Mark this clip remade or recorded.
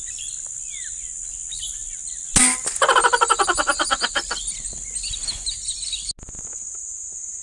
recorded